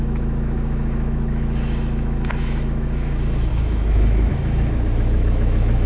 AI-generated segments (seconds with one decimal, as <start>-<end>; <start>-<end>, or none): 0.0-5.9